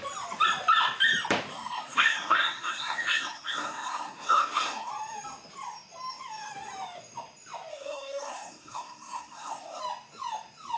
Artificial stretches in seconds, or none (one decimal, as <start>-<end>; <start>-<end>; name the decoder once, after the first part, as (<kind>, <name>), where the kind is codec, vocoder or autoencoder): 1.5-4.9 (codec, SNAC); 7.7-9.8